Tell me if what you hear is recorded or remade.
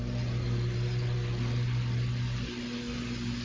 recorded